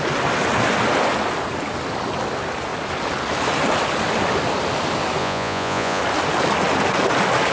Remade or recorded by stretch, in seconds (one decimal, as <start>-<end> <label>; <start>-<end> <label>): 0.0-5.2 recorded; 5.2-6.0 remade; 6.0-7.5 recorded